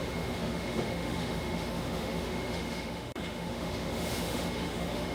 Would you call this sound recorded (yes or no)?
no